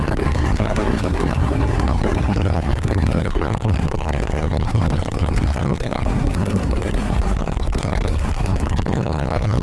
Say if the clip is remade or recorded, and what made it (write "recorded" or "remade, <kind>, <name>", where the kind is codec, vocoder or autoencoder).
remade, codec, SNAC